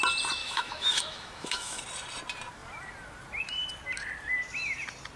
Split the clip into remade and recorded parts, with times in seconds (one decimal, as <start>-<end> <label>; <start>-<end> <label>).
0.0-0.4 recorded; 0.4-1.8 remade; 1.8-5.2 recorded